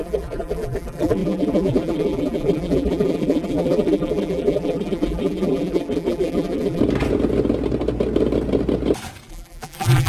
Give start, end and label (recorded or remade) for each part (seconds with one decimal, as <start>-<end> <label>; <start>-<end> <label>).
0.0-6.8 remade; 6.8-9.3 recorded; 9.3-10.1 remade